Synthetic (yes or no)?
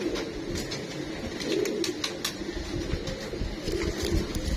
no